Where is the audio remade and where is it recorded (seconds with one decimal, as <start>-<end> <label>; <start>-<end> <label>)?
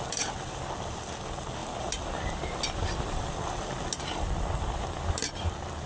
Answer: 0.0-5.9 recorded